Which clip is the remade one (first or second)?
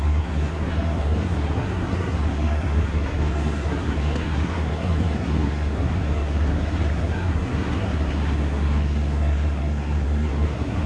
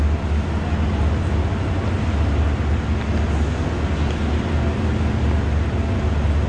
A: first